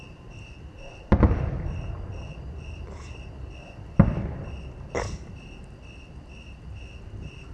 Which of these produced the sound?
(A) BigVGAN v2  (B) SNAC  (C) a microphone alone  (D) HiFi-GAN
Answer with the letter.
C